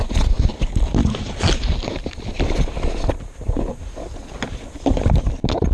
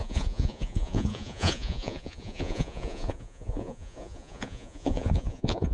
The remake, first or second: second